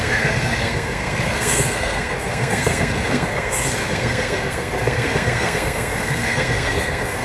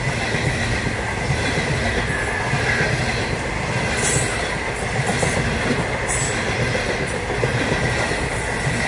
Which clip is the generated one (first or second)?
first